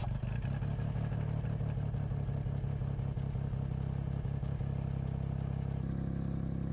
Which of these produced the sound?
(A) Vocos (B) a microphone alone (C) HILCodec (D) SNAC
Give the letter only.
B